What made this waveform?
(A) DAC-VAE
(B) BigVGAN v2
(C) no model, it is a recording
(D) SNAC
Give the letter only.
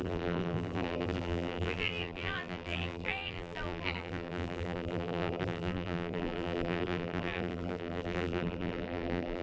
B